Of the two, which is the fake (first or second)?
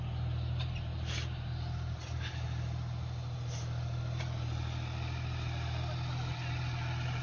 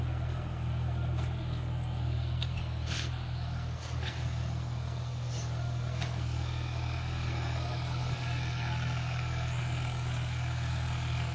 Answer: second